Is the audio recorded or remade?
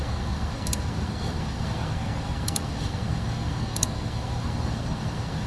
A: remade